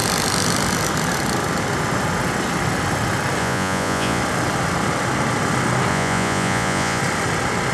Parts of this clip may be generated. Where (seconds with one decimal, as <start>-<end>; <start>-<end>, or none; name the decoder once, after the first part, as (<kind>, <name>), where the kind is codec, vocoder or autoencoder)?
3.4-4.2 (vocoder, Vocos); 5.9-7.0